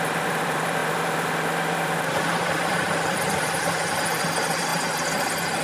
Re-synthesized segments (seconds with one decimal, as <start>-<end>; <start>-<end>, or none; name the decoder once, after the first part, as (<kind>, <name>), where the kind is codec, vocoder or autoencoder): 0.0-4.7 (vocoder, BigVGAN v2)